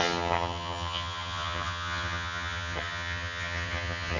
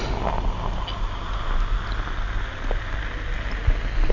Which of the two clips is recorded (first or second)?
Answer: second